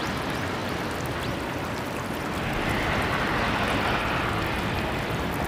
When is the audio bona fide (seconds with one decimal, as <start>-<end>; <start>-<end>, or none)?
0.0-5.5